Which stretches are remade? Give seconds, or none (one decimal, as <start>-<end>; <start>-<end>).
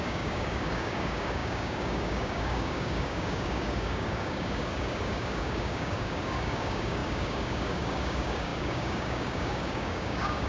0.0-10.5